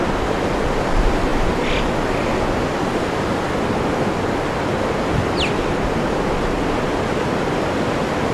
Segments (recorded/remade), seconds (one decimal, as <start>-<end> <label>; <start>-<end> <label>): 0.0-8.3 recorded